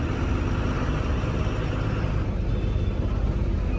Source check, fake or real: real